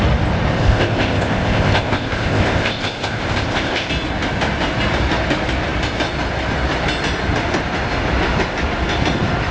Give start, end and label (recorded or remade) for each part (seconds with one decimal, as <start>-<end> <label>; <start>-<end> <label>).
0.0-0.6 recorded; 0.6-3.9 remade; 3.9-9.5 recorded